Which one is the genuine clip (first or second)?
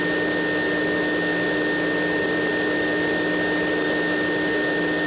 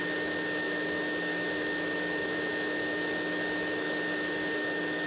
first